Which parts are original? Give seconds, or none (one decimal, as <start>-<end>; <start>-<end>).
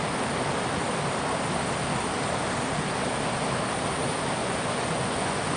0.0-4.4